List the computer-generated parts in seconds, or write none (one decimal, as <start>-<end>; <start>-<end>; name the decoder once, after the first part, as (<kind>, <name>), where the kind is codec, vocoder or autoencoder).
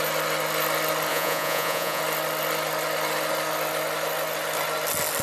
1.1-2.0 (vocoder, Vocos)